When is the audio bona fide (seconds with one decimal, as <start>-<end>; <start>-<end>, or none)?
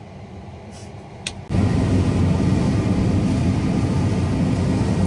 0.0-5.1